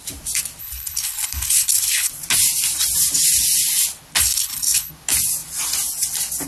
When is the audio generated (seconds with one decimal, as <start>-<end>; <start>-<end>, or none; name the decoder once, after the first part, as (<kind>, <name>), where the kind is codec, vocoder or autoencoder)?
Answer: 0.6-2.1 (codec, HILCodec); 4.2-4.9